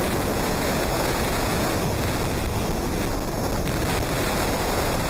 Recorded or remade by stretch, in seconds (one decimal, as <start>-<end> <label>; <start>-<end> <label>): 0.0-1.5 remade; 1.5-4.6 recorded; 4.6-5.1 remade